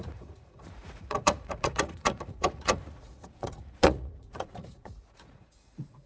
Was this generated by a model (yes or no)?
yes